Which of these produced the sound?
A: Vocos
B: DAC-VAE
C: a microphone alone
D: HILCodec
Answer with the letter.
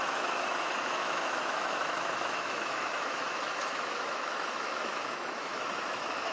B